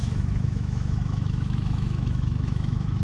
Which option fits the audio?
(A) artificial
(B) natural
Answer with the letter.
A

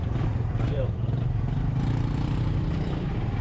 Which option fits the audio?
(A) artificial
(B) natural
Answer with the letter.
A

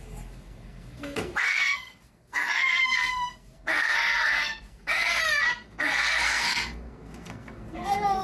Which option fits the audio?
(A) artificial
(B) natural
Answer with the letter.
A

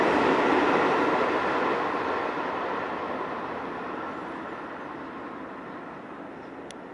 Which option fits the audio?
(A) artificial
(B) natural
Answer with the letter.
B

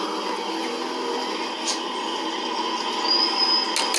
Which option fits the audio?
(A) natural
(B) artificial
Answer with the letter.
A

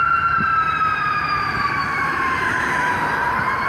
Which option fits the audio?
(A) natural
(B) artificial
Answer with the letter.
B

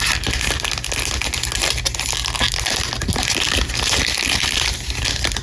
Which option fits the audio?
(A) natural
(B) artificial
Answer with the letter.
A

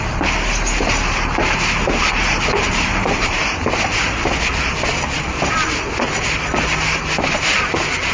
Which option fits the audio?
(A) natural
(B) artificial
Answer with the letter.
A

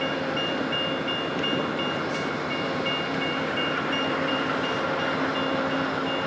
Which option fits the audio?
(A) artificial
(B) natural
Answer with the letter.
B